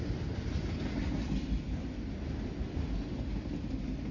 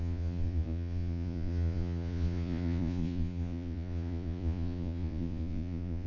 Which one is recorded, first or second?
first